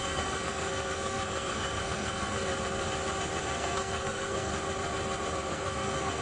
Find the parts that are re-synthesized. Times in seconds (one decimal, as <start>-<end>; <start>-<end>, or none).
0.0-2.5; 3.4-4.5; 5.4-6.2